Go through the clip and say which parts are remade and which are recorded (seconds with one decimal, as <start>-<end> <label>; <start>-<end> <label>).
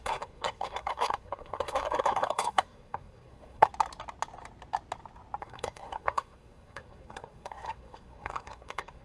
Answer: 0.0-3.7 remade; 3.7-5.4 recorded; 5.4-9.0 remade